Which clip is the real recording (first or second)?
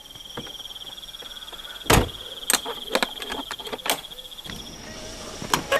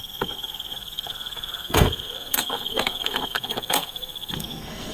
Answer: first